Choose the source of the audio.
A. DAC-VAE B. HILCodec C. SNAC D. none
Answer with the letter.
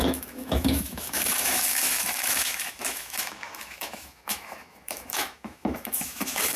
A